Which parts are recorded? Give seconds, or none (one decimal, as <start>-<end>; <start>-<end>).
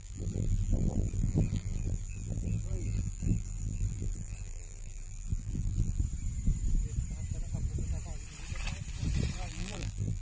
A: 6.0-9.5